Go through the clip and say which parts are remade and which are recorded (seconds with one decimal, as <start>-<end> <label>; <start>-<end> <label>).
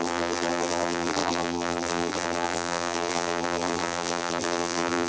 0.0-5.1 remade